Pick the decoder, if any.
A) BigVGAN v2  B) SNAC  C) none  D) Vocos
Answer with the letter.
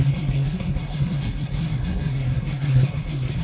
B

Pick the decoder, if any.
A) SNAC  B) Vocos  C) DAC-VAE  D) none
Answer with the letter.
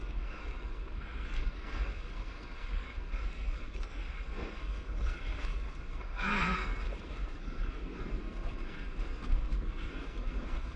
A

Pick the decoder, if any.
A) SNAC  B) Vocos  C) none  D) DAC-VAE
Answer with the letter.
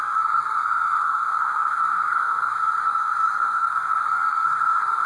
A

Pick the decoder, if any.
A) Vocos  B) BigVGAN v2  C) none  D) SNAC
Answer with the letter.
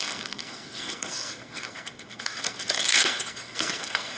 D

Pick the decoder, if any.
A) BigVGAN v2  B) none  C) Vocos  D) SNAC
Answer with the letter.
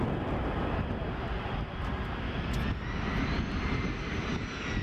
B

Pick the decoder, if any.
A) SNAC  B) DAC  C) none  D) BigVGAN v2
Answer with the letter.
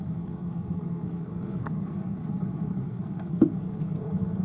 A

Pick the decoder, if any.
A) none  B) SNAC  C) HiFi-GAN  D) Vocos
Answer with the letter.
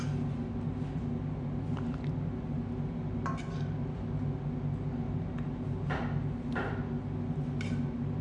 A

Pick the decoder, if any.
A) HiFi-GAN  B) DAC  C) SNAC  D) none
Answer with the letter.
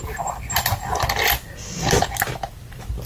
D